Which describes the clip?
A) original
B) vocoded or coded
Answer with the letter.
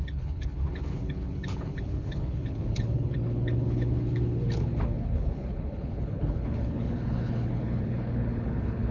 B